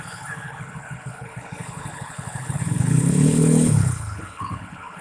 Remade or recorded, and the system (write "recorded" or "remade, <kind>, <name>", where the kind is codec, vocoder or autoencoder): remade, codec, HILCodec